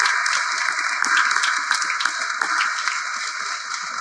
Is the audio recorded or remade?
recorded